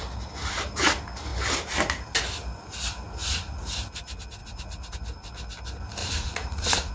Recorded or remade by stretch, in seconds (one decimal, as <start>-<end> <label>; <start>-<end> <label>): 0.0-3.2 recorded; 3.2-3.8 remade; 3.8-4.4 recorded; 4.4-4.9 remade; 4.9-6.0 recorded; 6.0-6.9 remade